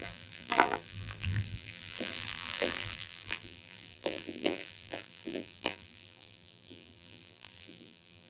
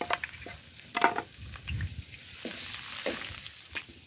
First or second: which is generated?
first